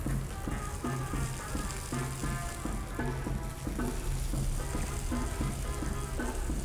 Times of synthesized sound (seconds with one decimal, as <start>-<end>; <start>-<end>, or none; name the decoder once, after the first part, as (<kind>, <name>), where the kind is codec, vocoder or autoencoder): 1.0-1.7 (vocoder, BigVGAN v2)